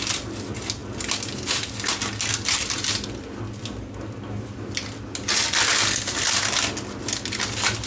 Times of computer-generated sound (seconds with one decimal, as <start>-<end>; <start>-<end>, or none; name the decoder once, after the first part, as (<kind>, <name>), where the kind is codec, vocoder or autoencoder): 0.8-1.7 (vocoder, BigVGAN v2)